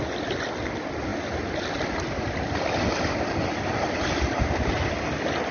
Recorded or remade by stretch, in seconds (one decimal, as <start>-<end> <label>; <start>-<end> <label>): 0.0-5.5 recorded